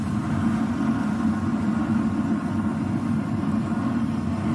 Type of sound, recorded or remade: recorded